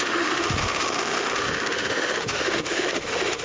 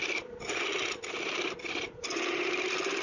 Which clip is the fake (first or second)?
first